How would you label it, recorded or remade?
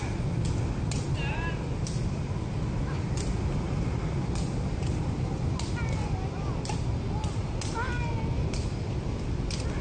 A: recorded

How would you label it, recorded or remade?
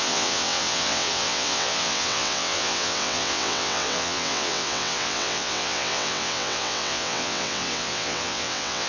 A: remade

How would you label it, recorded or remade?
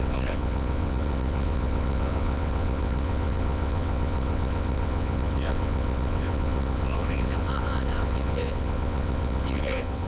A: remade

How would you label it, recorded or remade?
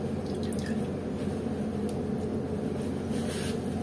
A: recorded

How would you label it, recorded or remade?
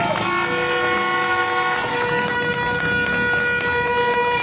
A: recorded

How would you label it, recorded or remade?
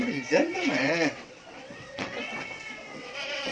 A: remade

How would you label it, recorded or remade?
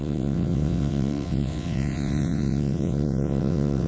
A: remade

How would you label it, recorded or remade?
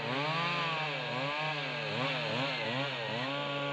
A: recorded